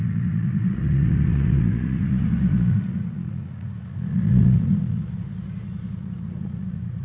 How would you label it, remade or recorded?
remade